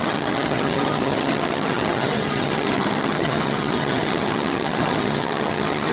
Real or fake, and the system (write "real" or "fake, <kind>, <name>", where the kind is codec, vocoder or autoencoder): fake, vocoder, HiFi-GAN